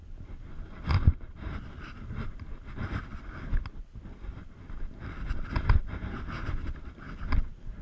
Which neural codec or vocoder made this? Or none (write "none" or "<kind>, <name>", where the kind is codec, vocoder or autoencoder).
none